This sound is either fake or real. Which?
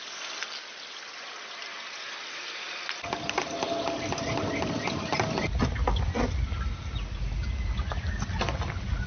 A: real